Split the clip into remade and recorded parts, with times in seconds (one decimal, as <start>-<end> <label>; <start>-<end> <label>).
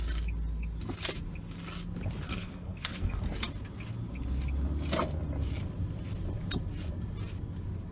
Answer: 0.0-2.3 recorded; 2.3-3.2 remade; 3.2-7.9 recorded